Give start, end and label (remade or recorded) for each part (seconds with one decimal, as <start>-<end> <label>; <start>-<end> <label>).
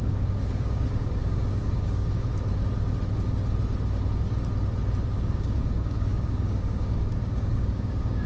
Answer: 0.0-2.3 remade; 2.3-5.1 recorded; 5.1-8.3 remade